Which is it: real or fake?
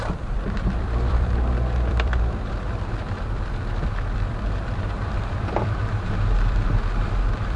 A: fake